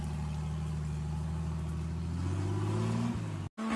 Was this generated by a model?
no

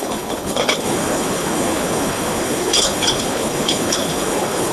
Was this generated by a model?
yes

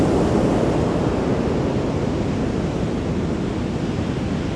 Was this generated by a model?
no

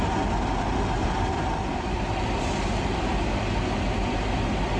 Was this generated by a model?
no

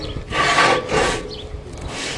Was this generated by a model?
yes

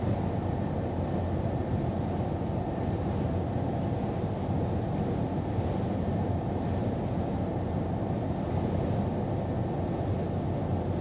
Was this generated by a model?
no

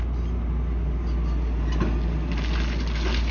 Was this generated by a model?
no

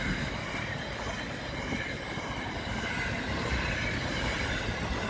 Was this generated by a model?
no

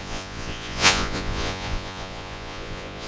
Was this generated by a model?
yes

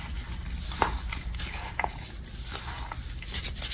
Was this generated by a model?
no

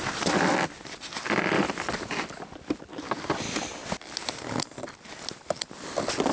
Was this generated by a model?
no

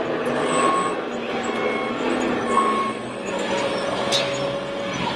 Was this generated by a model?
no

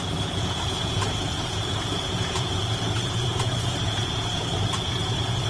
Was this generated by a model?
yes